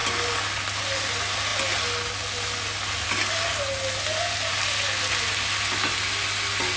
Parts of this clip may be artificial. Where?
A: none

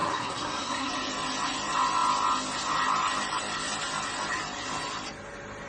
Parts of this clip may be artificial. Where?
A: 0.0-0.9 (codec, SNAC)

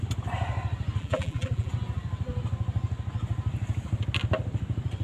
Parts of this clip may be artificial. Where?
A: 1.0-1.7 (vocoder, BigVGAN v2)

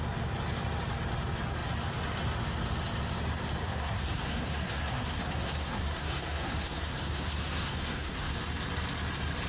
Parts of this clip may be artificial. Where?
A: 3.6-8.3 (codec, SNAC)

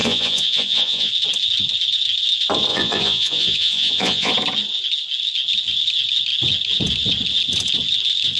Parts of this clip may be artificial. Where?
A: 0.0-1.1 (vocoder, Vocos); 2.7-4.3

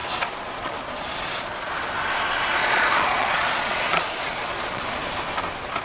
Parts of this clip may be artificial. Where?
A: 0.0-1.9 (vocoder, Vocos); 2.6-4.8

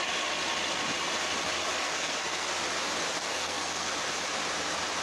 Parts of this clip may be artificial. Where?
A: 1.8-2.5 (codec, SNAC); 3.2-3.9

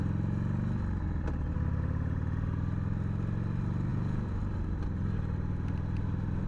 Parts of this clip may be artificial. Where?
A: 3.9-4.4 (vocoder, Vocos)